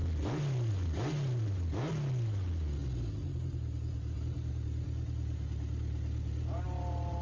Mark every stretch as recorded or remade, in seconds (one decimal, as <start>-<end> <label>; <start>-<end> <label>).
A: 0.0-7.2 recorded